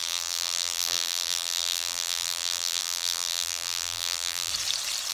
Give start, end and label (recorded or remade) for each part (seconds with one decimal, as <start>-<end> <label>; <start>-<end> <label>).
0.0-4.5 remade; 4.5-5.1 recorded

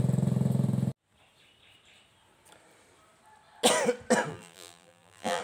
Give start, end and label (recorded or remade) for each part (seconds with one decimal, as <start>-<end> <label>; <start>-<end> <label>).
0.0-4.3 recorded; 4.3-5.4 remade

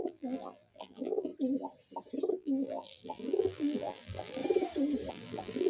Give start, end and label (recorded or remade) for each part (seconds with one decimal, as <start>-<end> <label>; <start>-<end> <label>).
0.0-1.3 remade; 1.3-2.3 recorded; 2.3-4.4 remade; 4.4-5.1 recorded; 5.1-5.7 remade

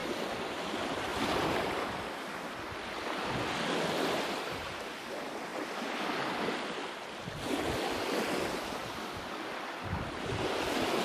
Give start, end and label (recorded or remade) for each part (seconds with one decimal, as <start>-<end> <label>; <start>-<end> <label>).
0.0-8.8 recorded; 8.8-9.7 remade; 9.7-11.0 recorded

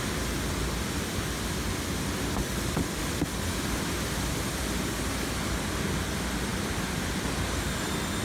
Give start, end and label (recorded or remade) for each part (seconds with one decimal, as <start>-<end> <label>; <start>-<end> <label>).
0.0-8.2 recorded

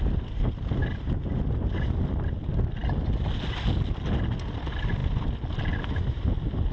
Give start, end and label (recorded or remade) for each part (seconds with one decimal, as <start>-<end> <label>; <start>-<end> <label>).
0.0-6.7 recorded

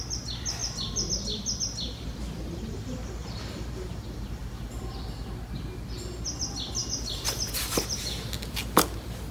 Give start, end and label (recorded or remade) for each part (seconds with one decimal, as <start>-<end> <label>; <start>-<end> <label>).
0.0-9.3 recorded

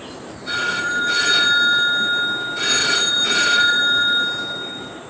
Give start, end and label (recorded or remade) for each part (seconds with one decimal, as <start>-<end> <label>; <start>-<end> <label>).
0.0-0.6 recorded; 0.6-1.1 remade; 1.1-2.8 recorded; 2.8-3.8 remade; 3.8-5.1 recorded